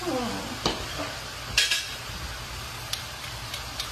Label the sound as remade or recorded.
recorded